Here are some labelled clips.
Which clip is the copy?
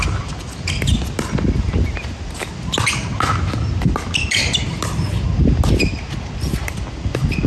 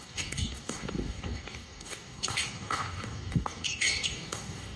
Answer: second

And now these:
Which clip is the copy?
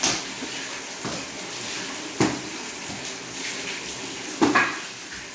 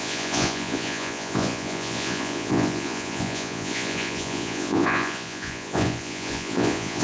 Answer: second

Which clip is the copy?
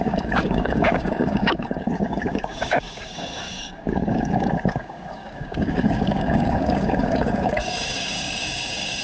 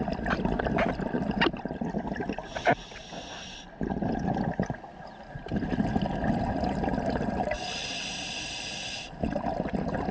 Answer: first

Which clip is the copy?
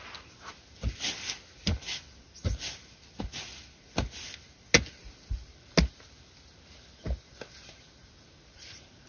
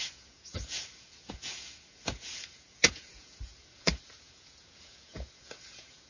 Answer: second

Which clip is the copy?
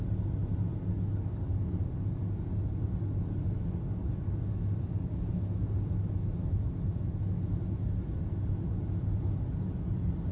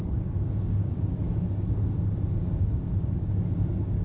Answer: second